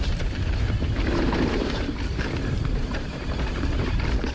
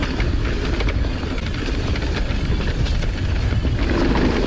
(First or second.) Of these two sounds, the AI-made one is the first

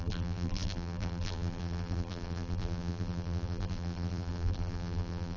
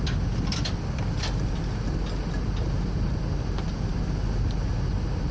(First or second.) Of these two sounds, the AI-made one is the first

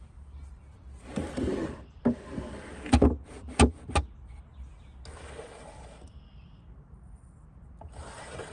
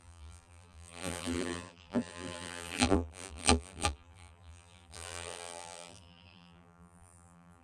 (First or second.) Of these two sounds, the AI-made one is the second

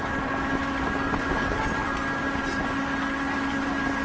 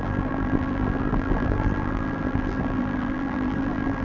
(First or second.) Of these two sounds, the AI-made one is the second